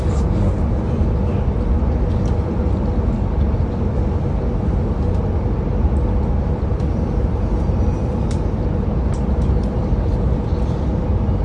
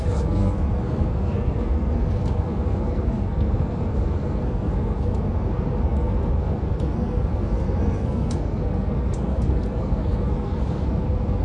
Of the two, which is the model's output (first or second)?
second